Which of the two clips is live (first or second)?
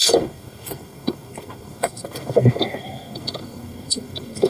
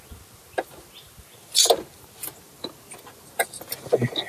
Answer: second